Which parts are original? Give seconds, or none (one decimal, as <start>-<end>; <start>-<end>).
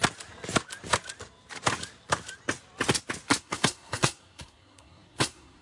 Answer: 0.0-3.4